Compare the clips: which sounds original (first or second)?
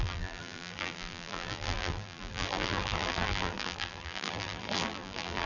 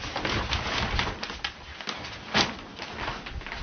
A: second